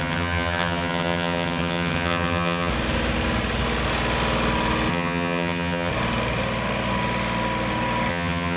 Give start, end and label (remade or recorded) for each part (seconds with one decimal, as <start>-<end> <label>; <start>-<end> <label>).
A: 0.0-2.7 remade; 2.7-4.9 recorded; 4.9-5.9 remade; 5.9-8.1 recorded; 8.1-8.6 remade